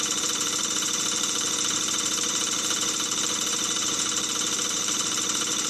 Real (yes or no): no